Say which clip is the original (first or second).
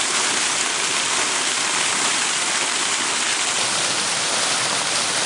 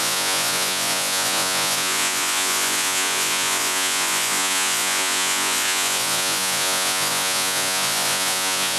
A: first